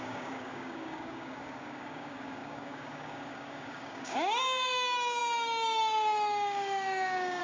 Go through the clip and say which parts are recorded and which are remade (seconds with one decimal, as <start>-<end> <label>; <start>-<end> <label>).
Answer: 0.0-7.4 remade